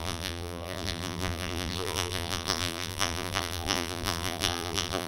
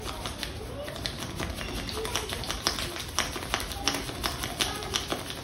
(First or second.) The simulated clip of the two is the first